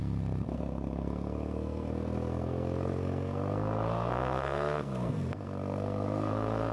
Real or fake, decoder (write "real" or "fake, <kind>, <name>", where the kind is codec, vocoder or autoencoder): fake, codec, SNAC